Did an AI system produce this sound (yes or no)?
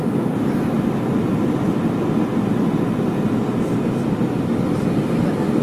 no